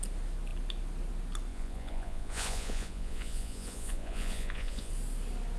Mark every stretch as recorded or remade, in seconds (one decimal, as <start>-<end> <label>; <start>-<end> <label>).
0.0-1.5 recorded; 1.5-4.9 remade; 4.9-5.6 recorded